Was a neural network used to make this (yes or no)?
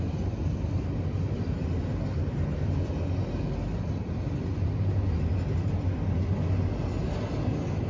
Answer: no